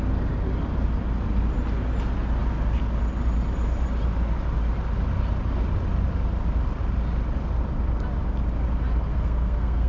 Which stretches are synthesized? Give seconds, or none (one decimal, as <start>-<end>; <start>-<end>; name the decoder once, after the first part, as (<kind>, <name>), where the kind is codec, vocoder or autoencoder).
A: 9.1-9.9 (codec, SNAC)